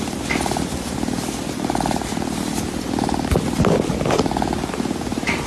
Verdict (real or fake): fake